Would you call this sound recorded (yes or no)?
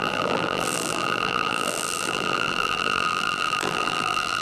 no